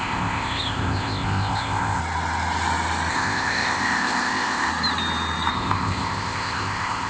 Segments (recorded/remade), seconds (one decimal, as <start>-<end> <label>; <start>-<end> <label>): 0.0-2.0 remade; 2.0-3.1 recorded; 3.1-4.7 remade; 4.7-5.5 recorded; 5.5-7.1 remade